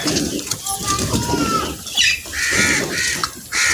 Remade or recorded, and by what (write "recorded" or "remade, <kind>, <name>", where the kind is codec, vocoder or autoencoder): recorded